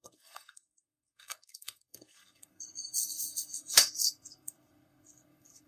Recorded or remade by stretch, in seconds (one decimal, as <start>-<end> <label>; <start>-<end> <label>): 0.0-5.7 remade